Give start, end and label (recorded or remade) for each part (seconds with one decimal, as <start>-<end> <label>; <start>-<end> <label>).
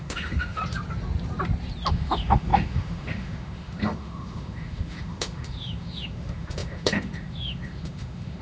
0.0-0.6 remade; 0.6-1.9 recorded; 1.9-8.4 remade